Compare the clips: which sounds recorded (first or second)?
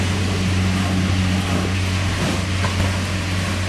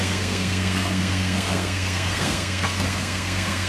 first